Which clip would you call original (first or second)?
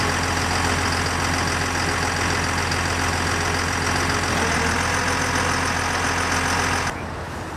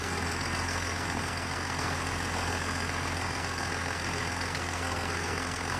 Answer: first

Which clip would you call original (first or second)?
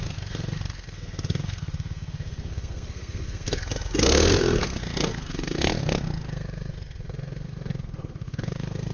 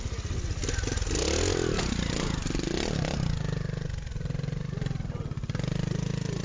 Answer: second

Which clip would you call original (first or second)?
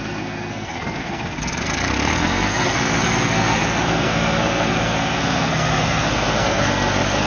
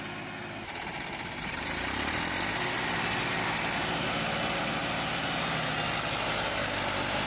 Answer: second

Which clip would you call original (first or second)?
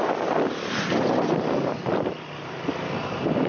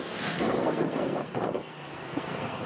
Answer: first